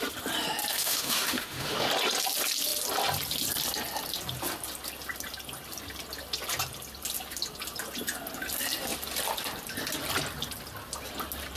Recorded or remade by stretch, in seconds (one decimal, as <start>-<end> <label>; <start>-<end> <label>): 0.0-0.7 recorded; 0.7-1.9 remade; 1.9-11.6 recorded